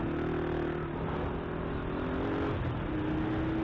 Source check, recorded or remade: recorded